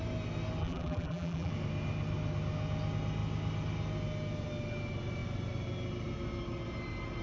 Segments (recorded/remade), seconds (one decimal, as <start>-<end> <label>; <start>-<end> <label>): 0.0-0.6 recorded; 0.6-1.5 remade; 1.5-7.2 recorded